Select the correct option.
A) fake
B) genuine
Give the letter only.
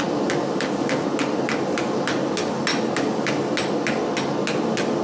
B